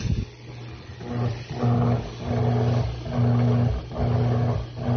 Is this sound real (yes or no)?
yes